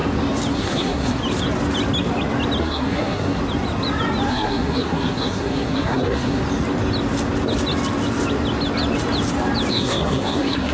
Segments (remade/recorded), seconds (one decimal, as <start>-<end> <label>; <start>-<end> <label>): 0.0-0.5 recorded; 0.5-1.2 remade; 1.2-2.6 recorded; 2.6-3.4 remade; 3.4-4.3 recorded; 4.3-6.4 remade; 6.4-9.7 recorded; 9.7-10.7 remade